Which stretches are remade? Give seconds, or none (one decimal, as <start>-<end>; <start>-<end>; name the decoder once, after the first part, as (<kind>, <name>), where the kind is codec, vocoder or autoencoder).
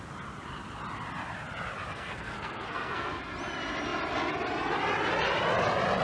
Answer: 1.9-3.2 (codec, SNAC)